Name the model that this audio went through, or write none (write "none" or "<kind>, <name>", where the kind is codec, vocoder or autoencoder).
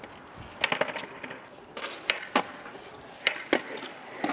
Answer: none